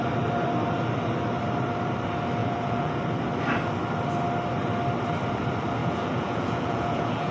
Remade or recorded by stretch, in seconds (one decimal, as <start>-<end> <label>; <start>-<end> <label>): 0.0-2.4 recorded; 2.4-3.0 remade; 3.0-5.8 recorded; 5.8-7.3 remade